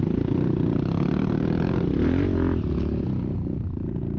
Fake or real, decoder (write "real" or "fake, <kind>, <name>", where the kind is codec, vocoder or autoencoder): real